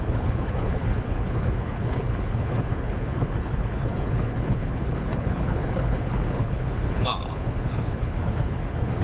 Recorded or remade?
remade